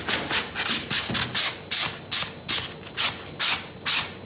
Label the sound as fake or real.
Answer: real